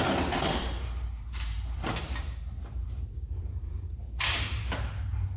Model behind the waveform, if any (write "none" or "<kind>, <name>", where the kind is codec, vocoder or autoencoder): vocoder, BigVGAN v2